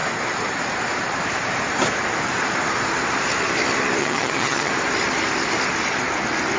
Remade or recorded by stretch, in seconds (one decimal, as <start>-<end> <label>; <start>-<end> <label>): 0.0-4.0 recorded; 4.0-4.7 remade; 4.7-6.6 recorded